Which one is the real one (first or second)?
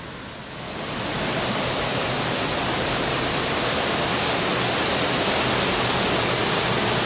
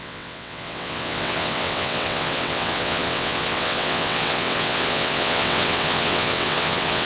first